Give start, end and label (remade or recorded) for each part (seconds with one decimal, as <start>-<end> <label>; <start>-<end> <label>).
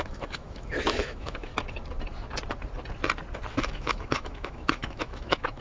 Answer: 0.0-1.5 remade; 1.5-3.5 recorded; 3.5-5.6 remade